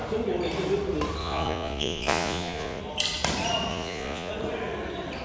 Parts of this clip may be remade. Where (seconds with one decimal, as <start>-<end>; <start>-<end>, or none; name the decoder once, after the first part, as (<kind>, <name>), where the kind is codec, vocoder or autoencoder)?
1.2-2.8 (vocoder, Vocos); 3.7-4.3